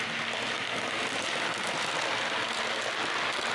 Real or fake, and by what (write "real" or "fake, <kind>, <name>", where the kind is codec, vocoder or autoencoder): real